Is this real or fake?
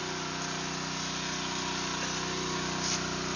real